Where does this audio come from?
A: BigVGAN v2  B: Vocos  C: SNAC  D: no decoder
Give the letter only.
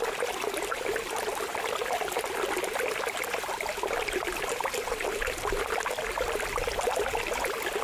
D